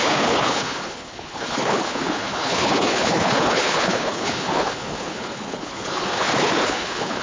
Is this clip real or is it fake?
fake